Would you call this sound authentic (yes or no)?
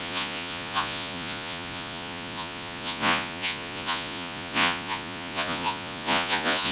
no